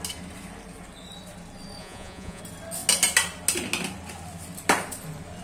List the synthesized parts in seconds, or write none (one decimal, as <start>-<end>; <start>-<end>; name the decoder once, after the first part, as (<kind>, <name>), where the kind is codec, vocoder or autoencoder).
1.8-2.4 (vocoder, Vocos)